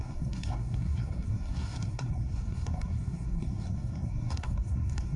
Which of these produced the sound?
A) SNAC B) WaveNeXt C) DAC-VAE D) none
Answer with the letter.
A